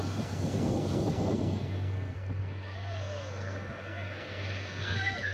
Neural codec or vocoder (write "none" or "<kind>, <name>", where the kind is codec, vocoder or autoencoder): codec, SNAC